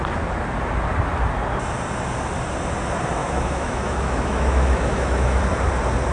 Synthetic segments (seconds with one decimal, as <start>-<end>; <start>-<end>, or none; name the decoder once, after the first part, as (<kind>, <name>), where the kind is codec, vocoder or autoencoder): 3.2-5.4 (autoencoder, DAC-VAE)